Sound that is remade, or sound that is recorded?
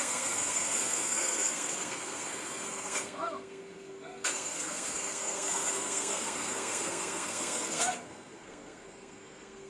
remade